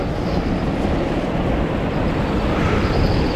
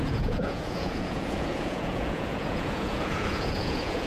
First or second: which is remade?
second